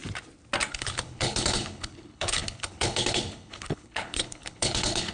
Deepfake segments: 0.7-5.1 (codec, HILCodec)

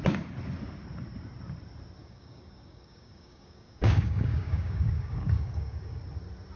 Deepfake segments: 2.0-6.0 (codec, DAC)

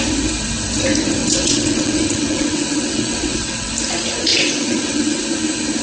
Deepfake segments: 1.2-3.7 (vocoder, WaveNeXt); 4.3-5.2

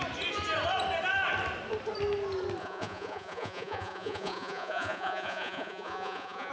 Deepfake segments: 2.6-6.5 (vocoder, Vocos)